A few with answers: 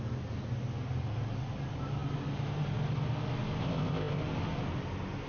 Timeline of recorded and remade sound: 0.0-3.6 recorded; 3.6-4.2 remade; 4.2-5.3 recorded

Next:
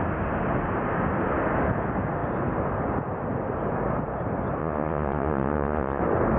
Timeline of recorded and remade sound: 0.0-4.6 recorded; 4.6-6.0 remade; 6.0-6.4 recorded

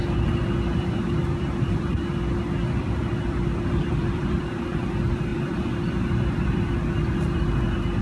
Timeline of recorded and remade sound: 0.0-8.0 remade